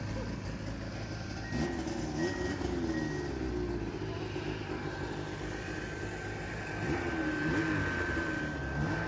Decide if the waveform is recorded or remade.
recorded